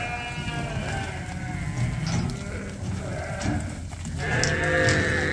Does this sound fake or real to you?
real